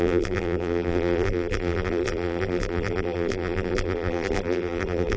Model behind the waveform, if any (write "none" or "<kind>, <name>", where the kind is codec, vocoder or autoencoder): vocoder, BigVGAN v2